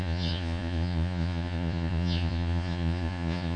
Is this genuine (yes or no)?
no